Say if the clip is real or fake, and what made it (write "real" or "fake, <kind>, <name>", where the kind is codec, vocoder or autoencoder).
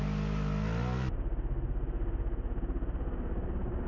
real